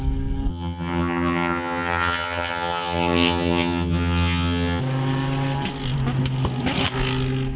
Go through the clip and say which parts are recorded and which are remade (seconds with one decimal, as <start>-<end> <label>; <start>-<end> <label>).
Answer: 0.0-0.5 recorded; 0.5-4.8 remade; 4.8-7.6 recorded